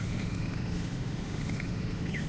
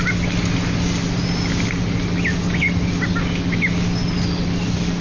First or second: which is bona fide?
second